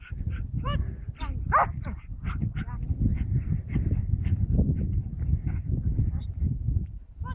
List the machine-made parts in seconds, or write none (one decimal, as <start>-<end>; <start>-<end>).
0.0-7.3